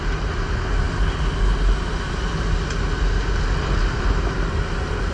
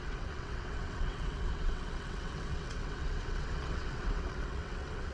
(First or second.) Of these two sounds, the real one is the first